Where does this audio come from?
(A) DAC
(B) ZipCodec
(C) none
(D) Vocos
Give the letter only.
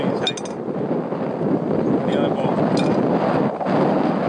C